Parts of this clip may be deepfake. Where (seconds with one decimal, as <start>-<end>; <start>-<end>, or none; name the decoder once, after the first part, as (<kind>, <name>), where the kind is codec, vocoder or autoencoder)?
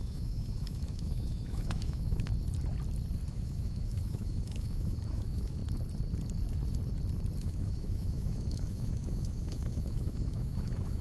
0.0-2.3 (autoencoder, DAC-VAE); 3.3-5.6; 7.4-11.0